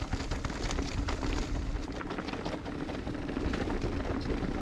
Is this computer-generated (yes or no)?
no